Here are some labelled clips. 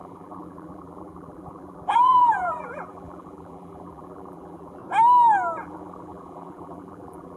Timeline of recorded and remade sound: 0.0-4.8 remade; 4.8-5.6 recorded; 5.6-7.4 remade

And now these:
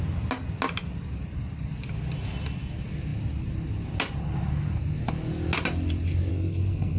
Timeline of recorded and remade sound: 0.0-6.3 recorded; 6.3-7.0 remade

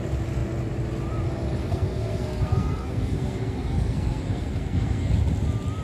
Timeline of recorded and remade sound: 0.0-1.6 recorded; 1.6-5.1 remade; 5.1-5.8 recorded

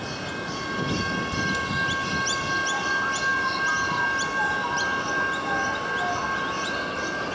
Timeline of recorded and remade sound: 0.0-7.3 recorded

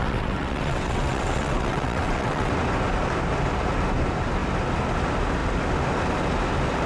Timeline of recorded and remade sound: 0.0-2.5 remade; 2.5-6.9 recorded